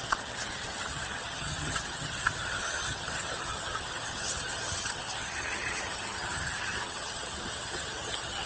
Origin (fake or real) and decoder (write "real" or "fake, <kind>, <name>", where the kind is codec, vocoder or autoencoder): fake, vocoder, HiFi-GAN